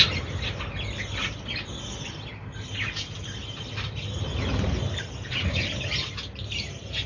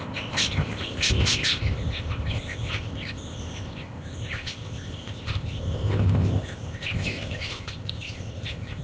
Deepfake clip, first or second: second